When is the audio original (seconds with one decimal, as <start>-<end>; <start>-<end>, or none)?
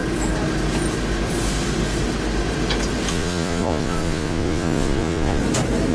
0.0-3.1; 5.4-5.9